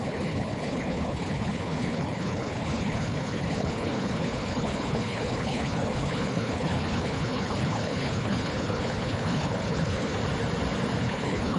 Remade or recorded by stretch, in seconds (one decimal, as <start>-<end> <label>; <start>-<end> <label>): 0.0-10.2 remade; 10.2-11.0 recorded; 11.0-11.6 remade